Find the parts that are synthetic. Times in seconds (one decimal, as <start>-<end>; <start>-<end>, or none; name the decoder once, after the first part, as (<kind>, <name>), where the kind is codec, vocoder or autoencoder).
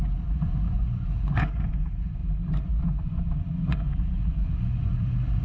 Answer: 0.0-2.2 (vocoder, Vocos); 2.8-5.4